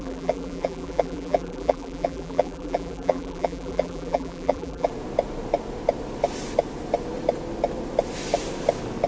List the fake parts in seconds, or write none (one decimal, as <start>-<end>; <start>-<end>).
0.0-4.9